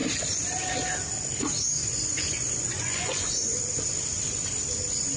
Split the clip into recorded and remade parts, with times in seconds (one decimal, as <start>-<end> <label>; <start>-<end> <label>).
0.0-1.8 recorded; 1.8-3.6 remade; 3.6-5.2 recorded